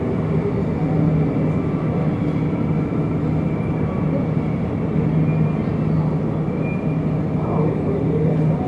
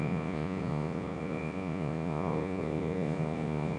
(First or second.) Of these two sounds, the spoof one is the second